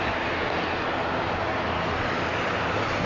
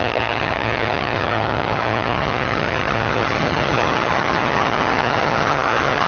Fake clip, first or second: second